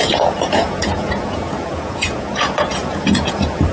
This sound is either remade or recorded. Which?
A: remade